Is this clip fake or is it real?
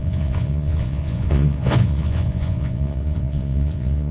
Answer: fake